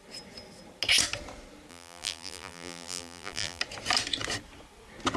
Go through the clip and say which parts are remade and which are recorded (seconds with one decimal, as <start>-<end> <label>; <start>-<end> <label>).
0.0-1.7 recorded; 1.7-3.6 remade; 3.6-5.2 recorded